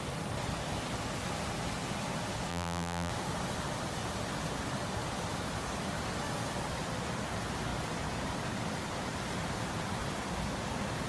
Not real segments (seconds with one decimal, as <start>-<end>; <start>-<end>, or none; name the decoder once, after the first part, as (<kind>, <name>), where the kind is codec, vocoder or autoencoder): 2.5-3.1 (vocoder, BigVGAN v2)